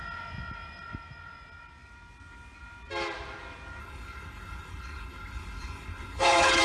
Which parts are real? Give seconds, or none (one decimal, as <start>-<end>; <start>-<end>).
0.0-3.8